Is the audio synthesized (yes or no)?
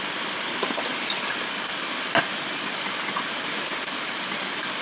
no